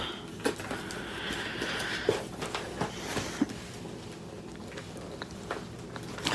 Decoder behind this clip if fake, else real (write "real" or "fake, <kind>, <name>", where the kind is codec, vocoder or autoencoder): real